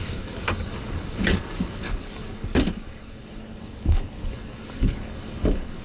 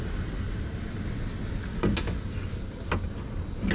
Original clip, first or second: second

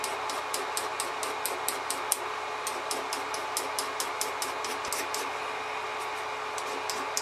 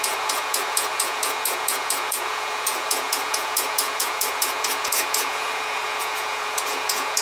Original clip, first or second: first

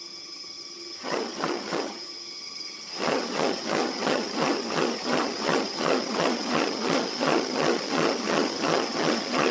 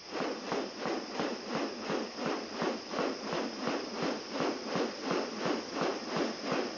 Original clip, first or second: second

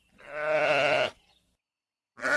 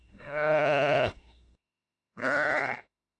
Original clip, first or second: first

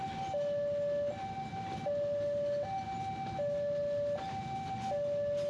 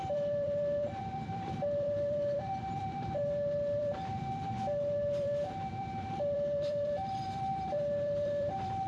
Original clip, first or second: first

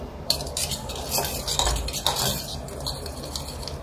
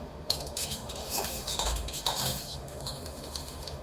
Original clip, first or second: first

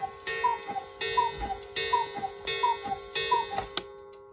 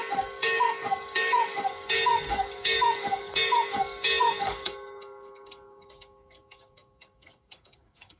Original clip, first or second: first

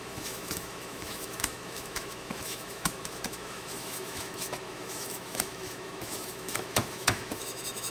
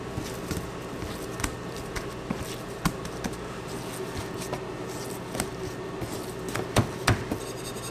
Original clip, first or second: second